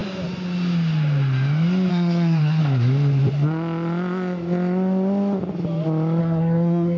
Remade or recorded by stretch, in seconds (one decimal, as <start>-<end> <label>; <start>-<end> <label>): 0.0-1.9 recorded; 1.9-2.6 remade; 2.6-6.2 recorded; 6.2-7.0 remade